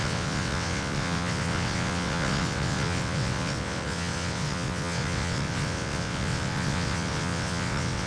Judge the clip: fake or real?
fake